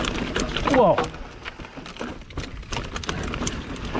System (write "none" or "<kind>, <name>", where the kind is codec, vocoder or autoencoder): none